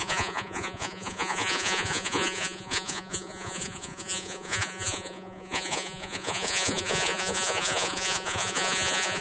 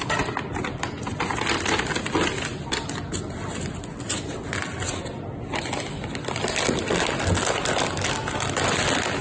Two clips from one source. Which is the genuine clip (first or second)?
second